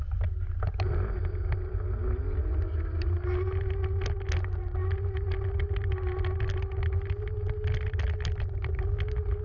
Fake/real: real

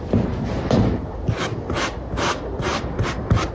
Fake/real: real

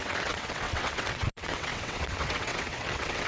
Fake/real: fake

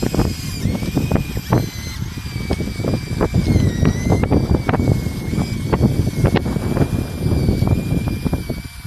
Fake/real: real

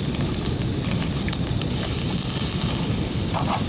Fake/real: real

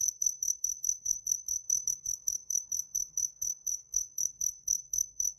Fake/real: fake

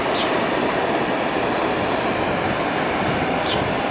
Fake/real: real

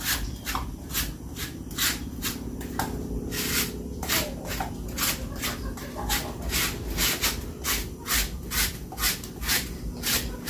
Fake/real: real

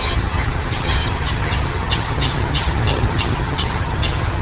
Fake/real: fake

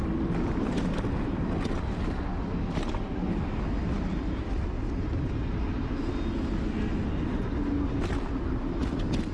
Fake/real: real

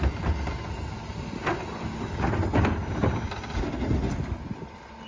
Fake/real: real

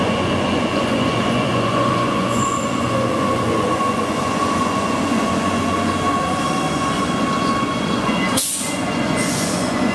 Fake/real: fake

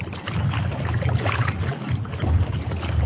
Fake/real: real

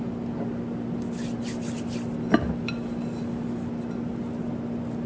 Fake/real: real